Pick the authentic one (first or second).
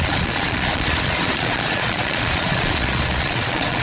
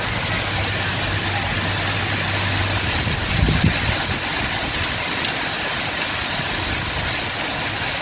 second